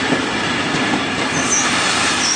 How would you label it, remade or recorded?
recorded